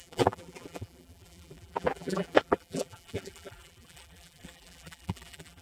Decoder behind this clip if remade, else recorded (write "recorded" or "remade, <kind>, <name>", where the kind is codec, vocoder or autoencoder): remade, vocoder, BigVGAN v2